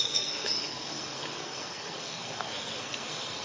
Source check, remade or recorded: remade